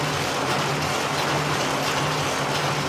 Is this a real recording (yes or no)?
yes